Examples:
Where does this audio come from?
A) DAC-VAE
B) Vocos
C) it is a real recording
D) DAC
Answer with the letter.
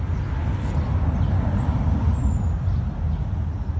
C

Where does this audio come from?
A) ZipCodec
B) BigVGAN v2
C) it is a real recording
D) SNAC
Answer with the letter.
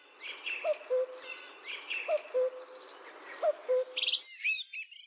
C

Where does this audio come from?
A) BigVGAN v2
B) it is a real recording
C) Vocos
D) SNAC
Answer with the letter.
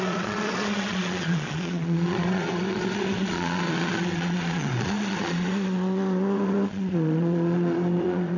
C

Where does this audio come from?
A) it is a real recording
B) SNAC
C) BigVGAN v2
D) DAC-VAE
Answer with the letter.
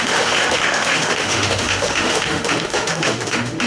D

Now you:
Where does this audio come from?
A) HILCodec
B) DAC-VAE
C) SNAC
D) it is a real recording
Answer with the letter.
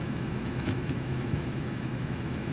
B